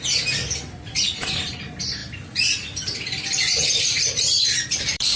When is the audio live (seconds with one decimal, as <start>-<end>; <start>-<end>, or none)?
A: 0.0-2.0